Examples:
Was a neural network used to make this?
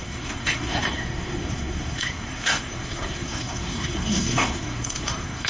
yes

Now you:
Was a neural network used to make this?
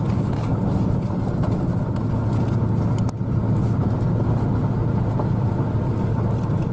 no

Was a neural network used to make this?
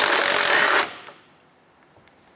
no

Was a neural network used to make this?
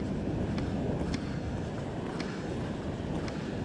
no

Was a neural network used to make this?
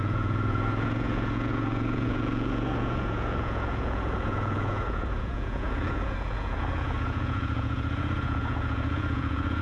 yes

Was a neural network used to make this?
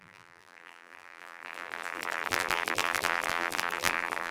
yes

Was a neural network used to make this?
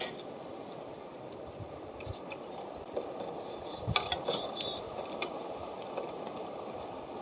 no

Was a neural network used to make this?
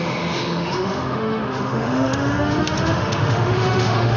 yes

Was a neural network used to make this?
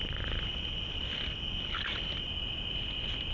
no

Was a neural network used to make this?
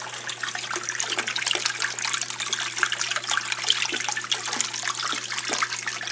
no